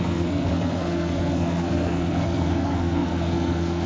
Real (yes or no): no